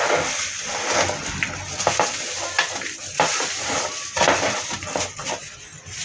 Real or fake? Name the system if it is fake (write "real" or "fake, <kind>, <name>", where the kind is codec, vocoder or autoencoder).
real